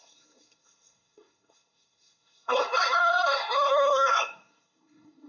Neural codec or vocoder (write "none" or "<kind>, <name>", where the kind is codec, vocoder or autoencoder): codec, SNAC